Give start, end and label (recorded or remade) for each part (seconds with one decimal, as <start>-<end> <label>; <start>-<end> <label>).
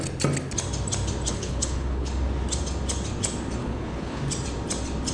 0.0-1.3 recorded; 1.3-2.1 remade; 2.1-3.6 recorded; 3.6-4.2 remade; 4.2-5.1 recorded